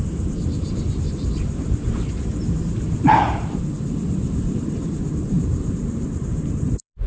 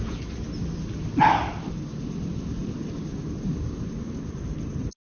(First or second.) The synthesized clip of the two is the first